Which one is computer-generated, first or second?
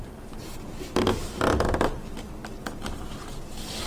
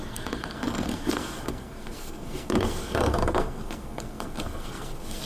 second